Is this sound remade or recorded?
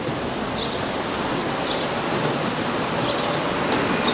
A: recorded